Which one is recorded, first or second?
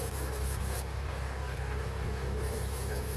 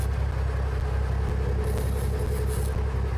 second